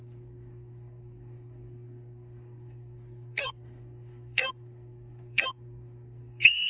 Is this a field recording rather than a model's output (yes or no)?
no